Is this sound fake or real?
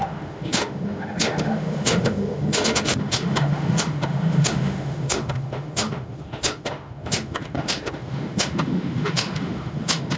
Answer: fake